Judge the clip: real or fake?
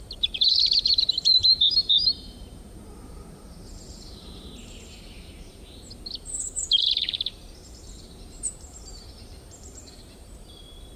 fake